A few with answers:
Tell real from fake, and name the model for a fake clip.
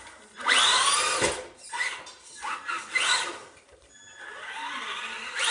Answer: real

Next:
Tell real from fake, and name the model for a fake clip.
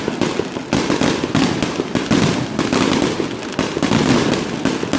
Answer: real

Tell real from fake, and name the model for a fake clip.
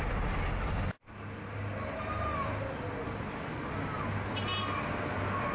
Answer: real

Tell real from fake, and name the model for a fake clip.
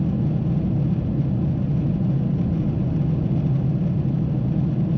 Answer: real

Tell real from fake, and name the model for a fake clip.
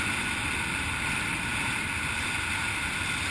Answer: real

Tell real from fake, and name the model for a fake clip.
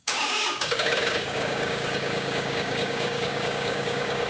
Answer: fake, codec, DAC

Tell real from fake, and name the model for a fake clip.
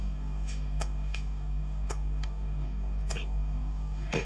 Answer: fake, codec, DAC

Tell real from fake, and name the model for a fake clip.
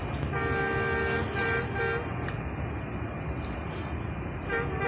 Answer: real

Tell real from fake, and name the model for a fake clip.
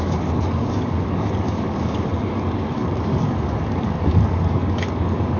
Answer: fake, codec, DAC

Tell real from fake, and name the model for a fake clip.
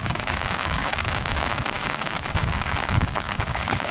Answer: fake, codec, DAC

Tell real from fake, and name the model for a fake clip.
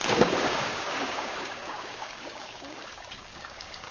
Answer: fake, codec, DAC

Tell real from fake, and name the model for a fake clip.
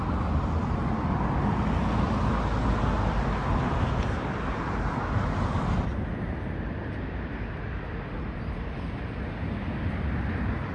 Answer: real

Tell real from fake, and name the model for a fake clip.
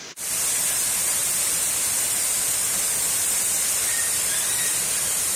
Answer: real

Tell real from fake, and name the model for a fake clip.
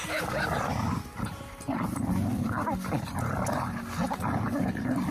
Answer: real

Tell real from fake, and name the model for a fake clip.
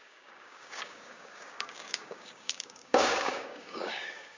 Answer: fake, codec, DAC